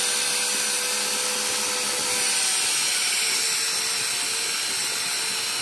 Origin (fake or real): real